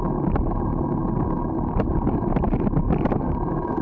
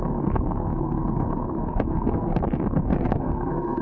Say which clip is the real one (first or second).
first